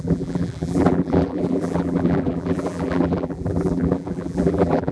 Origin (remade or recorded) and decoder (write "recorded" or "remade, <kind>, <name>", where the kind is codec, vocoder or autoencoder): remade, vocoder, BigVGAN v2